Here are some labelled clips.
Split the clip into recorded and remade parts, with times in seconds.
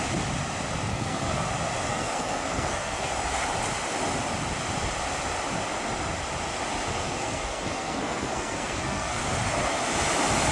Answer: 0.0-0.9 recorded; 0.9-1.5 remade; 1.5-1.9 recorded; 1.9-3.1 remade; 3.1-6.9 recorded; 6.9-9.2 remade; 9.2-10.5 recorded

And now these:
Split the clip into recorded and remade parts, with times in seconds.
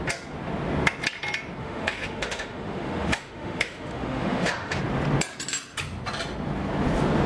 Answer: 0.0-1.6 recorded; 1.6-4.8 remade; 4.8-7.3 recorded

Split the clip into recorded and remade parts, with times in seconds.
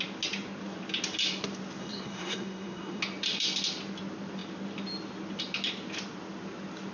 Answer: 0.0-1.8 recorded; 1.8-3.0 remade; 3.0-6.9 recorded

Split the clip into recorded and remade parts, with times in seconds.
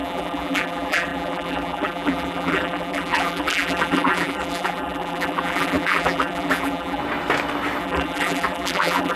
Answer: 0.0-7.0 remade; 7.0-7.8 recorded; 7.8-9.2 remade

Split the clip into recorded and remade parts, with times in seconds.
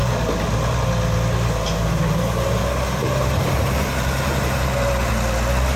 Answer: 0.0-3.0 recorded; 3.0-5.1 remade; 5.1-5.8 recorded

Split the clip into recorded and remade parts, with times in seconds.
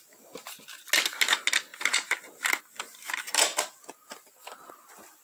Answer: 0.0-1.7 recorded; 1.7-2.6 remade; 2.6-5.2 recorded